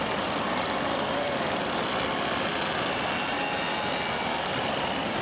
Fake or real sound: real